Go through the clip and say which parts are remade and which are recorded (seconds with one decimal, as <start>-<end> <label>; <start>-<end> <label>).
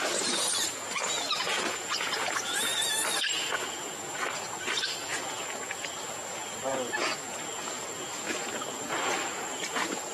0.0-2.7 remade; 2.7-3.3 recorded; 3.3-10.1 remade